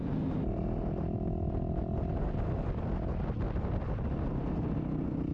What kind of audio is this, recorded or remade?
recorded